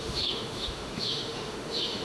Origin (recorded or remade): remade